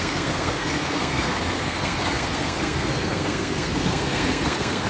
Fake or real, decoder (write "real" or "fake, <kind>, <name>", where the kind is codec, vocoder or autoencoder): fake, codec, SNAC